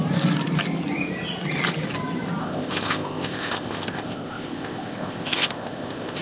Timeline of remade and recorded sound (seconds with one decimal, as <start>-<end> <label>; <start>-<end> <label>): 0.0-2.4 recorded; 2.4-6.2 remade